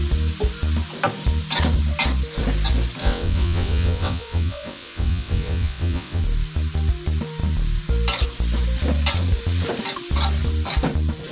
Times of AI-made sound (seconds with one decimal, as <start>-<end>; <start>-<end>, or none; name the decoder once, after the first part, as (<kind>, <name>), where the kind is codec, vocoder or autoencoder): 3.0-6.2 (vocoder, WaveNeXt)